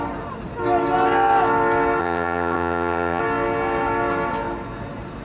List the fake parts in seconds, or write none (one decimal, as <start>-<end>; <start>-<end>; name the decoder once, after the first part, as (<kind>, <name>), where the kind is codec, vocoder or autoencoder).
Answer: 2.0-3.2 (vocoder, HiFi-GAN)